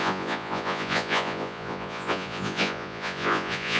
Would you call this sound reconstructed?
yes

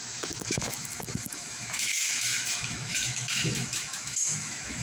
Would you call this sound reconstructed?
yes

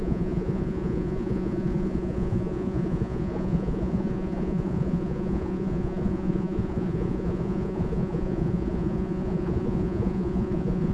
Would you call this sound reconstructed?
yes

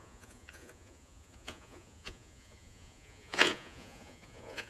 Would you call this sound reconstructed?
yes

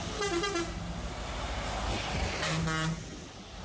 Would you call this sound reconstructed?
no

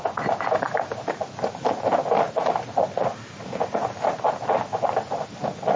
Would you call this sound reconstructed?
no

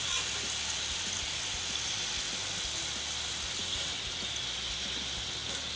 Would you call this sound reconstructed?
no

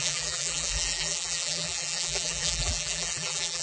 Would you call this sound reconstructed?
yes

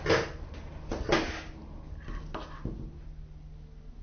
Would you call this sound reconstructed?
no